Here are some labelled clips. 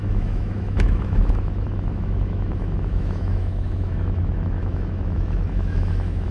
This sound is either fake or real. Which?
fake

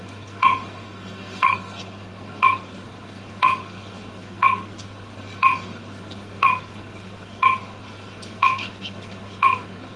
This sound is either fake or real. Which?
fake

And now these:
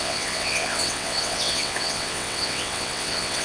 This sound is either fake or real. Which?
fake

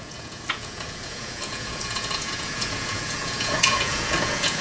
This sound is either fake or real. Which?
fake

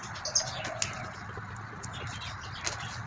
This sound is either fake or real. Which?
real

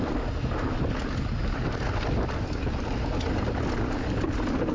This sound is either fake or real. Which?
real